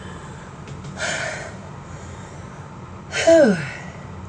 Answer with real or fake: real